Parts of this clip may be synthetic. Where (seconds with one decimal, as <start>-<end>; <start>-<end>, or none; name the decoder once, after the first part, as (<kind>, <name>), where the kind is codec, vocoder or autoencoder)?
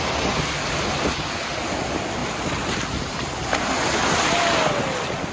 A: none